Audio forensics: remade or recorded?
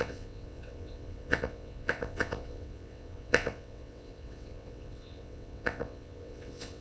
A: remade